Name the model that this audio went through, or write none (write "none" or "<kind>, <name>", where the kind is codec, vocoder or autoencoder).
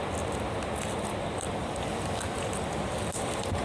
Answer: none